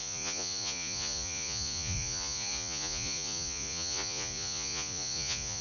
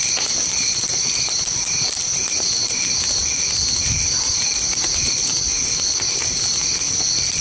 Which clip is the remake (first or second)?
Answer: first